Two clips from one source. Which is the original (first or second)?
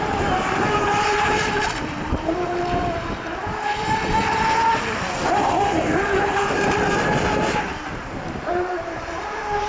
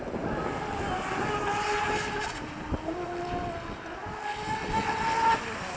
second